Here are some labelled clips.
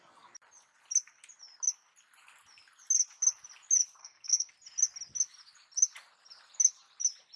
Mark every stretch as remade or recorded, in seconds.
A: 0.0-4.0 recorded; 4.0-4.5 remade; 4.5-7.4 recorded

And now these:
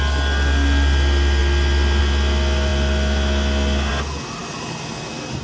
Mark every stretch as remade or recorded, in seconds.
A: 0.0-5.4 recorded